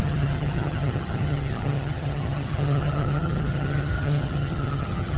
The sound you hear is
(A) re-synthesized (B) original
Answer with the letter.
A